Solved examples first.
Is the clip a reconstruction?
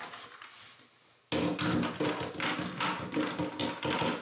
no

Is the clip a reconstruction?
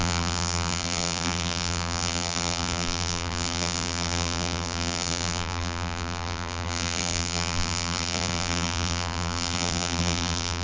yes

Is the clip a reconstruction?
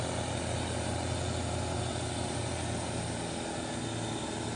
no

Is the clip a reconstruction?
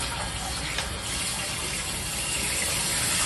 no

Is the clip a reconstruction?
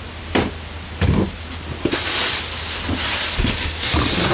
no